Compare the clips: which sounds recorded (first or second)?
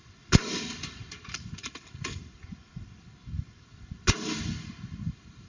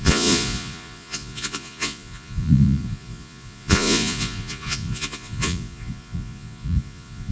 first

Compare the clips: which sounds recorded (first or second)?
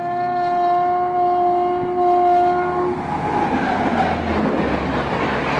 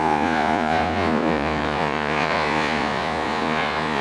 first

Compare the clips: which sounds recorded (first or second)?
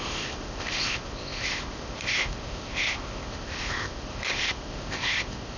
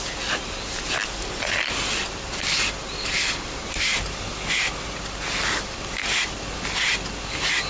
second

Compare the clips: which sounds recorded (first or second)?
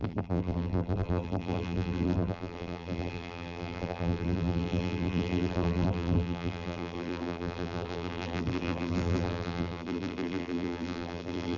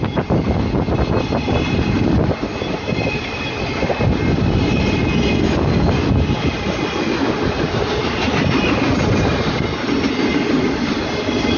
second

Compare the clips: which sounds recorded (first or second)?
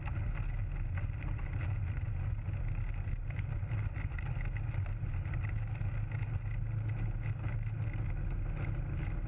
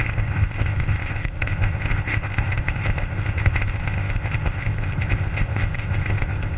first